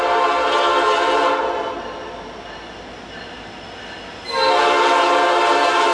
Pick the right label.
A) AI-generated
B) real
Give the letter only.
B